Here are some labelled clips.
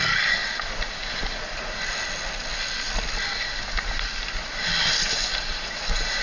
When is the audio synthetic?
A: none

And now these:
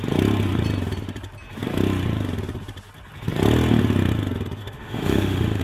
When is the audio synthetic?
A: 4.6-5.6 (autoencoder, DAC-VAE)

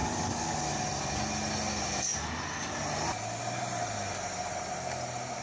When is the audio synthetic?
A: 0.0-0.6 (codec, DAC)

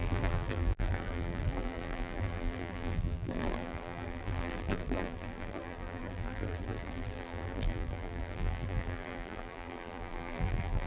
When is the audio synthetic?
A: 0.0-10.9 (vocoder, BigVGAN v2)

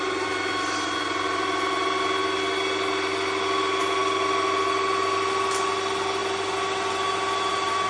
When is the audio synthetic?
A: none

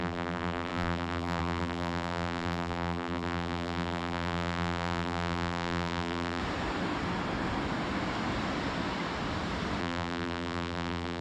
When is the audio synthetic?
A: 0.0-6.4 (vocoder, BigVGAN v2); 9.8-11.2

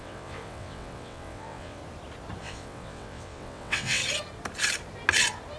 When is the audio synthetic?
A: 0.0-1.8 (vocoder, WaveNeXt); 2.4-4.0